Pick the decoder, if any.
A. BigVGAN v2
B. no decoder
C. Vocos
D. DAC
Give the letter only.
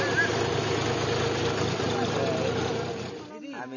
B